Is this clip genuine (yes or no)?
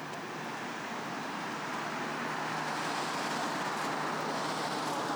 yes